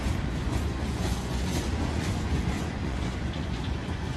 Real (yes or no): no